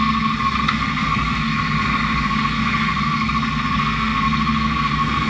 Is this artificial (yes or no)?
yes